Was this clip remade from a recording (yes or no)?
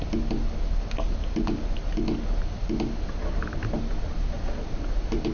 no